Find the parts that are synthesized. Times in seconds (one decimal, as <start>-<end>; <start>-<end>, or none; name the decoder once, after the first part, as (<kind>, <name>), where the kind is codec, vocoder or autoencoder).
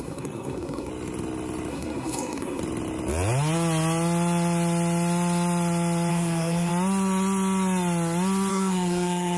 0.0-0.9 (codec, SNAC); 1.7-2.6; 6.1-6.7; 8.5-9.4